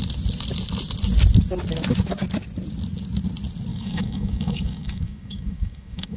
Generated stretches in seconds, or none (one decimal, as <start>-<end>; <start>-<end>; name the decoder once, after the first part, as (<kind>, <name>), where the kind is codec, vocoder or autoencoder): 3.7-6.2 (autoencoder, DAC-VAE)